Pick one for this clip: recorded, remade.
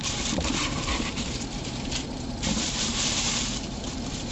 remade